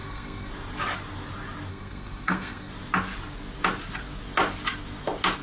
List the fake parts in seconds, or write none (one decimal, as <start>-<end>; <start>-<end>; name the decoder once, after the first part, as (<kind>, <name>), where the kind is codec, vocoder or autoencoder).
0.0-0.5 (codec, SNAC); 1.7-2.7